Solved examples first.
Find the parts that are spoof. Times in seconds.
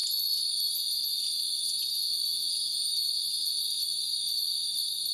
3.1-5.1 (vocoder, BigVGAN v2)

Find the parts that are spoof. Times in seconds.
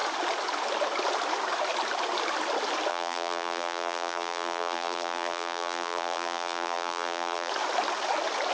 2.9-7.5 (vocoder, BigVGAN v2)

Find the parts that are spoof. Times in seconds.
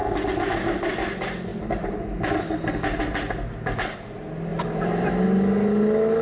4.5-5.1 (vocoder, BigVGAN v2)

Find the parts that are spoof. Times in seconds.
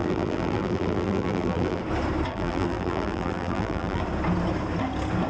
0.0-1.8 (vocoder, BigVGAN v2); 2.3-4.0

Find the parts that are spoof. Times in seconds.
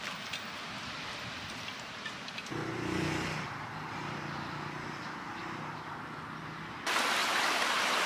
7.2-8.1 (vocoder, BigVGAN v2)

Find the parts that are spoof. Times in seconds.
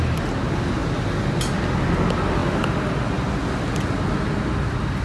none